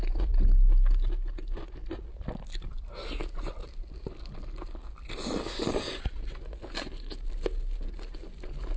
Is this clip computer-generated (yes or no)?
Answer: no